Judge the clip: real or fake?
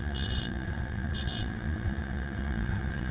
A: fake